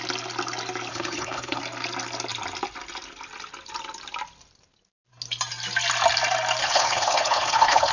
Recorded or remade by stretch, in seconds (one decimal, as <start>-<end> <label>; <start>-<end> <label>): 0.0-0.9 recorded; 0.9-1.6 remade; 1.6-6.6 recorded; 6.6-7.9 remade